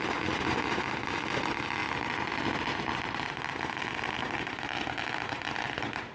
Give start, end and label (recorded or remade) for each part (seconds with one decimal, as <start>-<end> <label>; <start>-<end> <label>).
0.0-6.1 recorded